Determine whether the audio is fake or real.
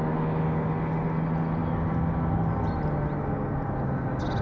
real